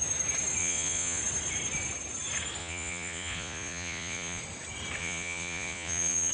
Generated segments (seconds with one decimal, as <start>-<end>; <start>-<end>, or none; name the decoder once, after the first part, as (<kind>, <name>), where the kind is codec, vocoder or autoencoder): 0.6-1.2 (vocoder, Vocos); 2.6-4.4; 5.0-6.3

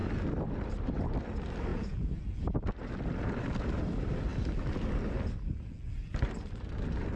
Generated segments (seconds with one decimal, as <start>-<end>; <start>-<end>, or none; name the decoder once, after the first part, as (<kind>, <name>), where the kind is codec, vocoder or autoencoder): 1.7-2.2 (vocoder, Vocos)

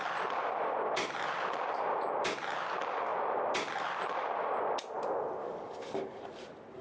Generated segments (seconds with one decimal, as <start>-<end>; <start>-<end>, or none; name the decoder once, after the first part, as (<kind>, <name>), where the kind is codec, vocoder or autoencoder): 5.4-6.2 (codec, DAC)

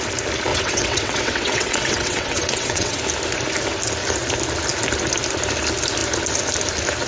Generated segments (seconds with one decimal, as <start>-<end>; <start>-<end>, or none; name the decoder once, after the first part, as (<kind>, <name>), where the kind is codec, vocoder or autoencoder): 0.5-3.0 (vocoder, WaveNeXt)

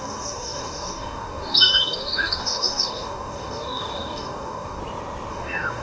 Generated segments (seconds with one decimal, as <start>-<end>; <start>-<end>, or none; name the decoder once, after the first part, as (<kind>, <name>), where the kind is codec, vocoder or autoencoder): 0.0-4.8 (codec, DAC); 5.3-5.8

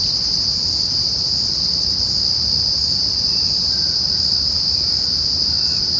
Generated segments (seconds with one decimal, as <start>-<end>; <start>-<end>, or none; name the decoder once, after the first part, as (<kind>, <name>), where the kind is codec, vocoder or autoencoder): none